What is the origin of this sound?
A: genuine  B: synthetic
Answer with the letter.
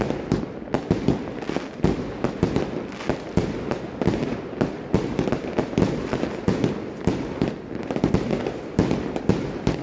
A